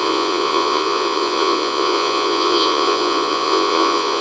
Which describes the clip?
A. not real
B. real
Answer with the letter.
A